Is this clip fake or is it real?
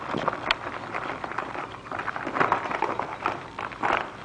fake